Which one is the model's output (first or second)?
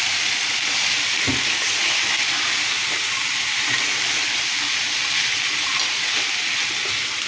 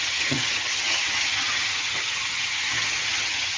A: second